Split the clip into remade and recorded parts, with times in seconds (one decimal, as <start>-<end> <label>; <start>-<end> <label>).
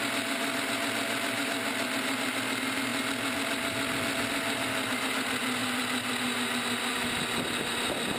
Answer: 0.0-8.2 recorded